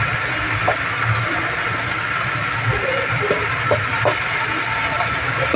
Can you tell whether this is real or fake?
real